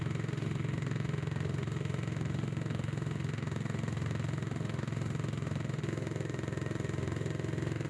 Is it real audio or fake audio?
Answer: fake